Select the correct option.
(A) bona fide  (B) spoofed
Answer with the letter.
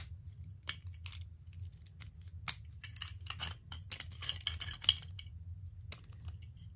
A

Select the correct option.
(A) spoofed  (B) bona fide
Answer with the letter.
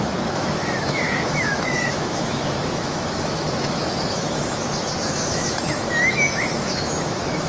A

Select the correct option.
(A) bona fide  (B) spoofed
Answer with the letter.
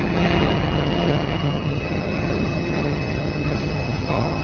B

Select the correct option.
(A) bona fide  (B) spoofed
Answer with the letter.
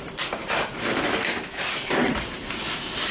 A